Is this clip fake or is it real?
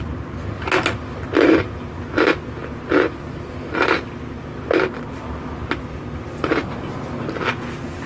real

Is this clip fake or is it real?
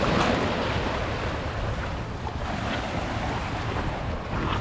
real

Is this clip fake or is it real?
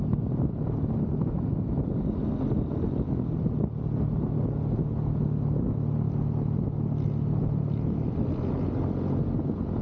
real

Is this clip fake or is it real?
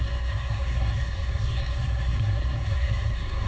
fake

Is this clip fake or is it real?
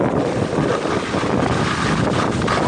real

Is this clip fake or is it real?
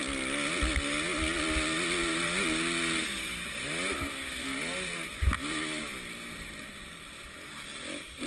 real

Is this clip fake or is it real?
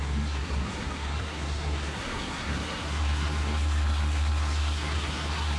fake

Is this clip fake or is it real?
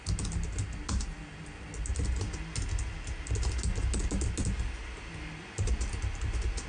real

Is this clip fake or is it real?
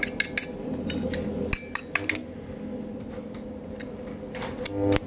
real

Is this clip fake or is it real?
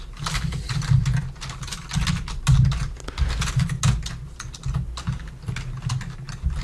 real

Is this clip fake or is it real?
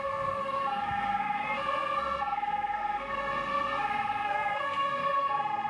fake